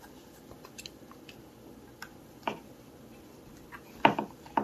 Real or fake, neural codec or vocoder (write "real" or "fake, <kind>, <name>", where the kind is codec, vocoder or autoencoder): real